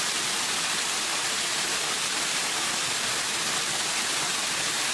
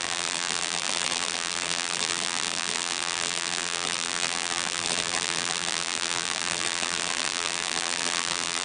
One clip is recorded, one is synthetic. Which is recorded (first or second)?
first